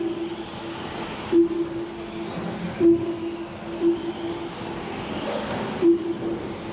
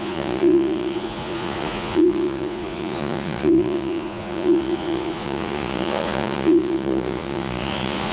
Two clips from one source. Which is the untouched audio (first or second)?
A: first